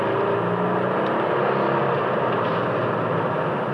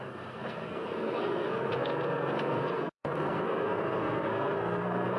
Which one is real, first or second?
first